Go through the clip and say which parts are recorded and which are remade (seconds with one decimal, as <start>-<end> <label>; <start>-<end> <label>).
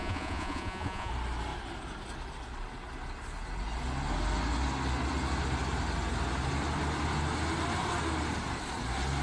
0.0-1.1 remade; 1.1-9.2 recorded